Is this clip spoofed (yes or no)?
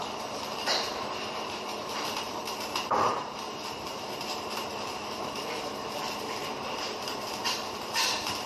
yes